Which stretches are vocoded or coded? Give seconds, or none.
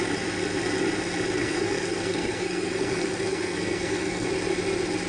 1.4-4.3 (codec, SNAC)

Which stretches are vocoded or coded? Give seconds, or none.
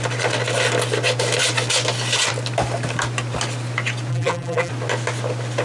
4.1-4.7 (vocoder, BigVGAN v2)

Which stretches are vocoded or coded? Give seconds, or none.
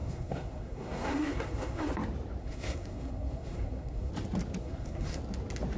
0.0-1.9 (codec, SNAC); 2.4-4.1; 4.6-5.2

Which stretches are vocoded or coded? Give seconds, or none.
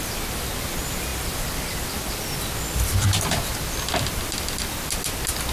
none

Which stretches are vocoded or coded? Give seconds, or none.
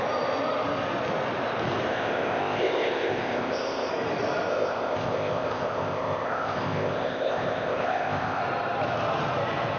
1.9-3.9 (codec, ZipCodec); 4.5-8.4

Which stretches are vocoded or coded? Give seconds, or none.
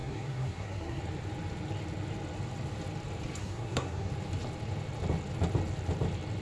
0.0-1.0 (codec, SNAC); 3.4-4.1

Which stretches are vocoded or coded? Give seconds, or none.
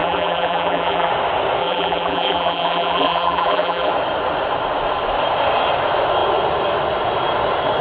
0.0-1.1 (vocoder, BigVGAN v2); 1.6-3.9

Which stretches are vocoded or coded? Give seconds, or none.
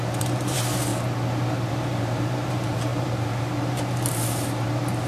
0.0-0.9 (vocoder, BigVGAN v2); 1.7-5.1